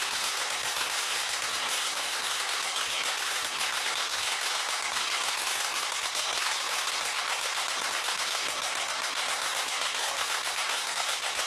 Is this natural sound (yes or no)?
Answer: no